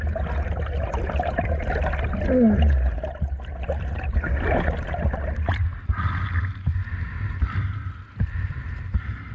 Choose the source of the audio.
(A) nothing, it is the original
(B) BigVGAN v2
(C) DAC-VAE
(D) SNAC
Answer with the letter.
A